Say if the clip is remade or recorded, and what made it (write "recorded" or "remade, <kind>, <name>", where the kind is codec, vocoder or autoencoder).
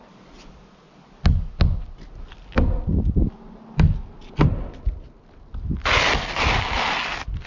recorded